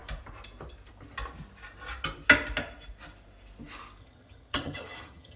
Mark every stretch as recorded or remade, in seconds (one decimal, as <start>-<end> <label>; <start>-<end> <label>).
0.0-4.0 recorded; 4.0-5.4 remade